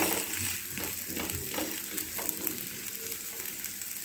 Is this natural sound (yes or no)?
yes